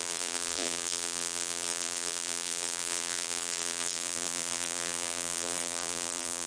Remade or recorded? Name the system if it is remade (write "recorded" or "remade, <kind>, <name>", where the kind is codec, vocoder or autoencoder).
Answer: remade, vocoder, BigVGAN v2